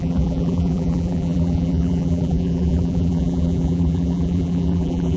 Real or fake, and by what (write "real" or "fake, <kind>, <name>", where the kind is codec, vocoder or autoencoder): fake, vocoder, BigVGAN v2